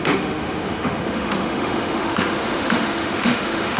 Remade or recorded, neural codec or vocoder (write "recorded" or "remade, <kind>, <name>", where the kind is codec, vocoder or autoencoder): remade, autoencoder, DAC-VAE